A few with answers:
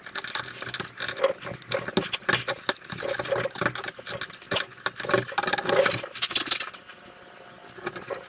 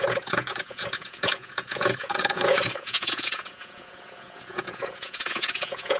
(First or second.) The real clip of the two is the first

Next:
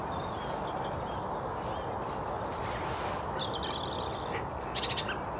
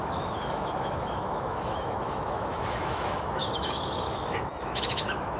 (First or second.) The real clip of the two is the first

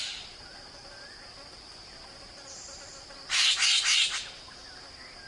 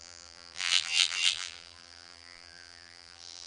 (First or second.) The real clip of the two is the first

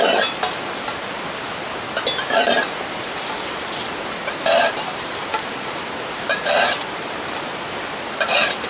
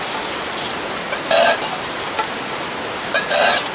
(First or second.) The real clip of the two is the second